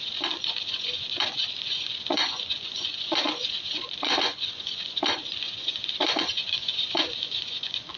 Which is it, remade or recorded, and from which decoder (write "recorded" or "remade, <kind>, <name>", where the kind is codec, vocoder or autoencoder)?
remade, vocoder, Vocos